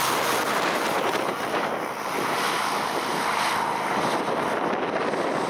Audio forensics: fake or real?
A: real